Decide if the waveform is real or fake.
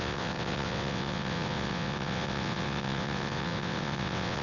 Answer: fake